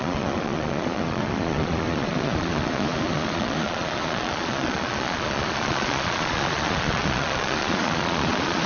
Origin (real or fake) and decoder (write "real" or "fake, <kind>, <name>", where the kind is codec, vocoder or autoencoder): fake, vocoder, Vocos